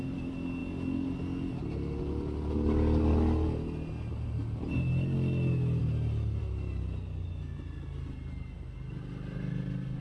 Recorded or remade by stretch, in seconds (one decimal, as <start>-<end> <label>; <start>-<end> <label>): 0.0-10.0 recorded